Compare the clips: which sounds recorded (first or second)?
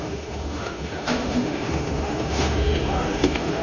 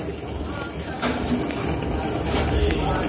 second